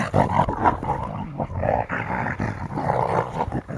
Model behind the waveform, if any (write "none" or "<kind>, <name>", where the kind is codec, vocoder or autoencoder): none